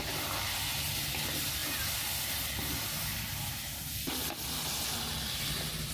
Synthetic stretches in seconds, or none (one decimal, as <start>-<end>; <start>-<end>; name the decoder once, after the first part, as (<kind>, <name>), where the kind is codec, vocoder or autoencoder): none